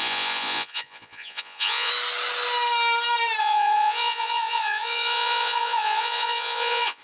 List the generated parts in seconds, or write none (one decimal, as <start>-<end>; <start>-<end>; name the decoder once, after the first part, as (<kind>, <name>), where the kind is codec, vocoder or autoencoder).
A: 0.0-1.9 (vocoder, Vocos); 3.4-7.0

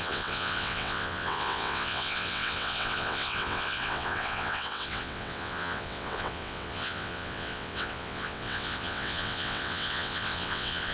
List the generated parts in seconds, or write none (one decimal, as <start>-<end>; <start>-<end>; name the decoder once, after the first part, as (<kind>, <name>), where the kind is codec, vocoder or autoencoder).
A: 0.0-10.9 (vocoder, WaveNeXt)

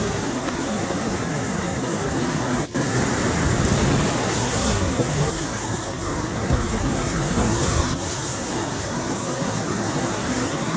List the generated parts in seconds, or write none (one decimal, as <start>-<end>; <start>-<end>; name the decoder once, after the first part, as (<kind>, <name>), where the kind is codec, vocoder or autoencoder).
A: 0.0-3.0 (codec, SNAC); 4.2-10.8

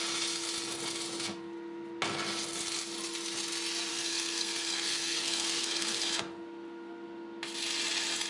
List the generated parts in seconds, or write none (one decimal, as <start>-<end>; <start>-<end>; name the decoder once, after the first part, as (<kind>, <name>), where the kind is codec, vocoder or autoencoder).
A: 3.9-6.2 (codec, SNAC)

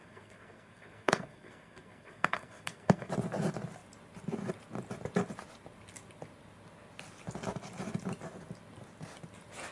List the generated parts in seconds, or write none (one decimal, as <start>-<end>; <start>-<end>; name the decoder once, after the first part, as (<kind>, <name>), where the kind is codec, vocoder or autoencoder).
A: 0.0-3.1 (codec, SNAC)

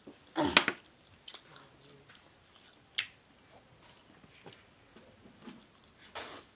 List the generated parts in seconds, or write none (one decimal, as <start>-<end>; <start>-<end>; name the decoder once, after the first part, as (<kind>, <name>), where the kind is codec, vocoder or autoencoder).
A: none

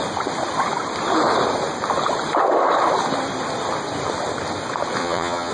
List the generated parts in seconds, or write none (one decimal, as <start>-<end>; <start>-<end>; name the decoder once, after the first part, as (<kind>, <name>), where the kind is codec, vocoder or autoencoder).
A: 5.0-5.5 (vocoder, Vocos)